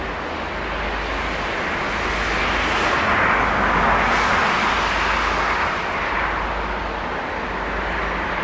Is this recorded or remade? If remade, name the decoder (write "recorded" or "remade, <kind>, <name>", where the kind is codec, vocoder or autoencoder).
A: recorded